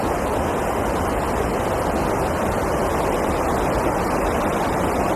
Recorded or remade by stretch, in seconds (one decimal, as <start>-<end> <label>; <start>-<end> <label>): 0.0-0.6 remade; 0.6-2.9 recorded; 2.9-4.8 remade; 4.8-5.2 recorded